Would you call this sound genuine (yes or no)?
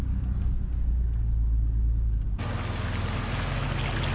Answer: yes